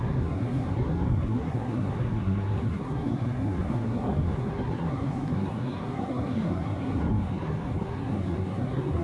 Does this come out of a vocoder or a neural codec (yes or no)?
yes